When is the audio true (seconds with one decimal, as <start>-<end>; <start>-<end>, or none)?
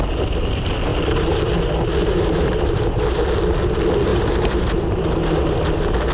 0.0-0.9; 1.5-2.0; 3.2-4.1; 5.1-6.1